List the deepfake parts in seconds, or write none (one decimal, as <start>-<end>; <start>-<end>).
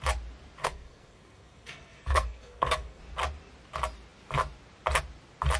0.6-3.0